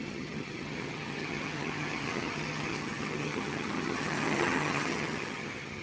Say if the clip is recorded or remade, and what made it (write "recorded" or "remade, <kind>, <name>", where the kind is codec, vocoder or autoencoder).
remade, vocoder, HiFi-GAN